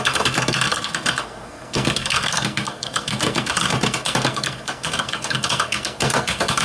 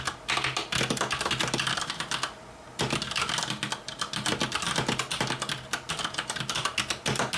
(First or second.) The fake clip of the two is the first